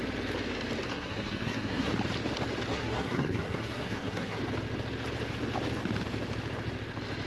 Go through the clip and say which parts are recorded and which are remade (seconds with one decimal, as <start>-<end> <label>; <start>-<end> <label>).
0.0-0.9 recorded; 0.9-1.9 remade; 1.9-2.7 recorded; 2.7-4.4 remade; 4.4-7.3 recorded